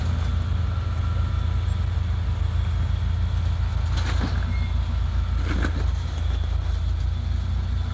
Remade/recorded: recorded